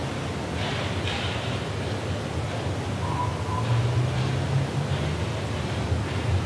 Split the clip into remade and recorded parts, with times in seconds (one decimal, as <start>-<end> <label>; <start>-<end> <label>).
0.0-6.5 recorded